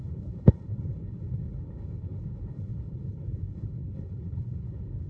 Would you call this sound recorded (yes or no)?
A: no